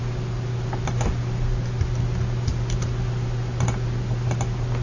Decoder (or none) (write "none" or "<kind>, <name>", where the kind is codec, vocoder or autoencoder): none